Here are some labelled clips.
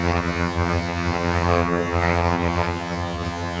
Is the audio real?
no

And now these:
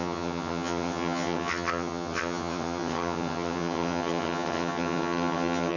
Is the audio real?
no